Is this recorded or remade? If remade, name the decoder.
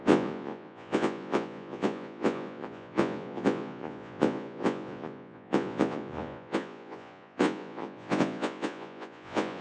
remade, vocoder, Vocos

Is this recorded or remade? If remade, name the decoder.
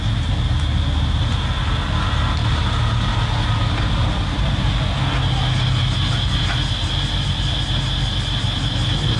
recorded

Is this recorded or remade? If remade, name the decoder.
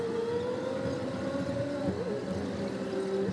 recorded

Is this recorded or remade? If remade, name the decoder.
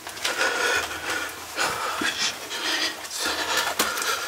recorded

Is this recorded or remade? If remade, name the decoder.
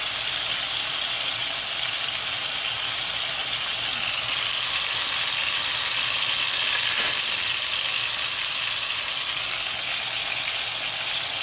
recorded